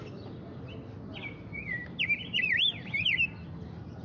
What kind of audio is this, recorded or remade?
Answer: recorded